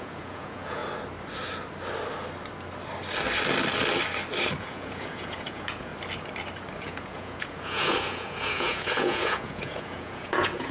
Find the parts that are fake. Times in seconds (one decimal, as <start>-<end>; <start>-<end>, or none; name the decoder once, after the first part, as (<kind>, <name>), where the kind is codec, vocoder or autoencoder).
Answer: 0.0-0.8 (vocoder, Vocos); 4.6-5.9; 6.8-10.7